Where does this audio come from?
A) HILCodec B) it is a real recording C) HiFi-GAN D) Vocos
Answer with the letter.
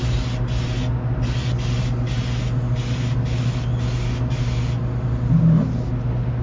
B